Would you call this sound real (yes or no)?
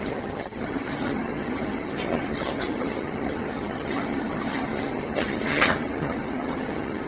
no